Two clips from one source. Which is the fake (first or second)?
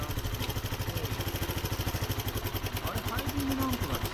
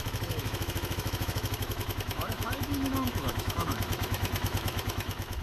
second